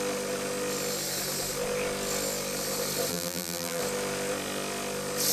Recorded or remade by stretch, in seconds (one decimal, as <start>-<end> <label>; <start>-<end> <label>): 0.0-3.1 recorded; 3.1-3.8 remade; 3.8-5.3 recorded